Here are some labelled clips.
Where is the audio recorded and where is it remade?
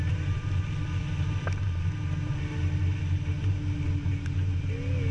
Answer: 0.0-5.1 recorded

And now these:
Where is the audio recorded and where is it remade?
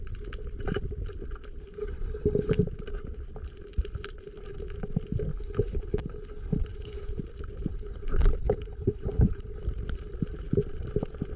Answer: 0.0-1.8 recorded; 1.8-2.6 remade; 2.6-5.3 recorded; 5.3-7.2 remade; 7.2-7.7 recorded; 7.7-9.6 remade; 9.6-11.4 recorded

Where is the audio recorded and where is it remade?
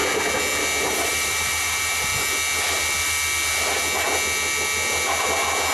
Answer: 0.0-0.8 recorded; 0.8-2.1 remade; 2.1-5.7 recorded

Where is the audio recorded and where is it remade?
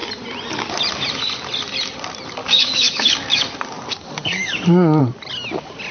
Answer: 0.0-2.4 recorded; 2.4-5.0 remade; 5.0-5.9 recorded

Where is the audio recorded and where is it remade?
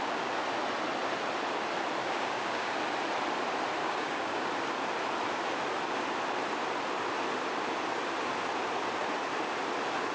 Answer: 0.0-2.0 recorded; 2.0-2.7 remade; 2.7-3.8 recorded; 3.8-4.5 remade; 4.5-10.1 recorded